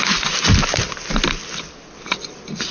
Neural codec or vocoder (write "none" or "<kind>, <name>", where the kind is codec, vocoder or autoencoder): none